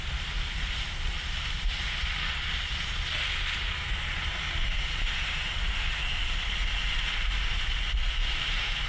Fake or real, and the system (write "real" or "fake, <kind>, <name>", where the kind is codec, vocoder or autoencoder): real